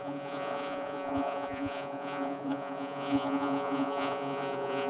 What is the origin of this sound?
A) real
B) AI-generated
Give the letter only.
B